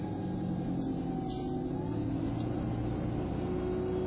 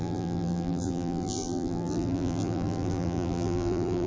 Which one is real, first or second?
first